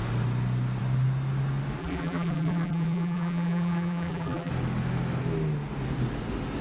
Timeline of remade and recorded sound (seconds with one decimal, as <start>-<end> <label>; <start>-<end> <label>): 0.0-1.8 recorded; 1.8-4.5 remade; 4.5-6.6 recorded